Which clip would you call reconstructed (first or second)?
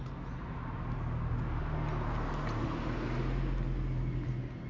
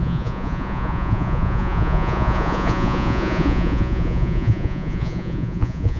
second